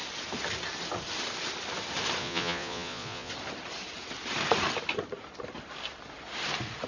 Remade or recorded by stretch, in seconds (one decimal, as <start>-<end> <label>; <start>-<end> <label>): 0.0-2.2 recorded; 2.2-3.3 remade; 3.3-6.9 recorded